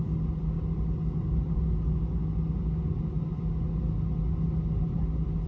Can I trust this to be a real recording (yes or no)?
yes